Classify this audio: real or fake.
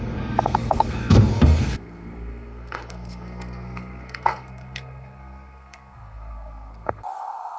fake